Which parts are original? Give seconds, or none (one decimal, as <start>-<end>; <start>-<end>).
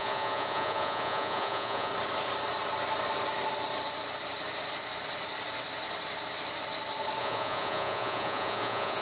1.9-7.2